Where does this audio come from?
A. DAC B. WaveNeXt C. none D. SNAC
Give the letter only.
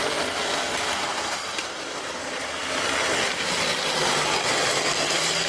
C